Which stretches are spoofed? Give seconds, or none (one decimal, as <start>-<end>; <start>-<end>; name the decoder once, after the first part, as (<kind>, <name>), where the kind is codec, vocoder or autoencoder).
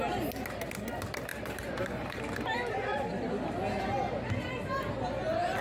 1.3-2.2 (vocoder, BigVGAN v2)